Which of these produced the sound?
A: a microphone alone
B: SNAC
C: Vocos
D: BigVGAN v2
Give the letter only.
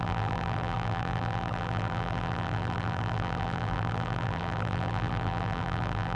D